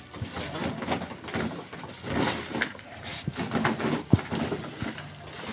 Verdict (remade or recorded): recorded